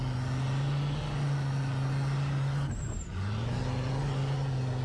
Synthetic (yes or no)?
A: no